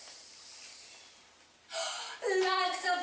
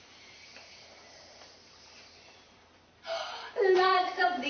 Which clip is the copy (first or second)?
second